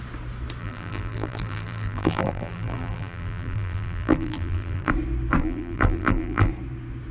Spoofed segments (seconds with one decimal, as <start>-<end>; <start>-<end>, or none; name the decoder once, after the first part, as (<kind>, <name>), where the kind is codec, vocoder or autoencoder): 0.6-4.9 (vocoder, BigVGAN v2); 5.4-6.5